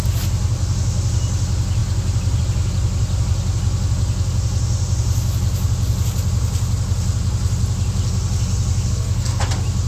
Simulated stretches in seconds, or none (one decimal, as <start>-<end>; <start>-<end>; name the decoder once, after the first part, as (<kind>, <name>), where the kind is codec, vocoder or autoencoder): 8.9-9.4 (codec, SNAC)